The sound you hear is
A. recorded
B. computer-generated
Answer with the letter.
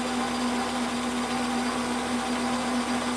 A